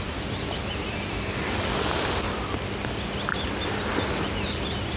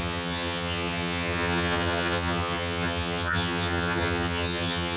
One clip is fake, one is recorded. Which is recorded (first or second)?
first